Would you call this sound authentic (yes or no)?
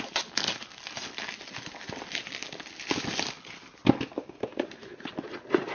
yes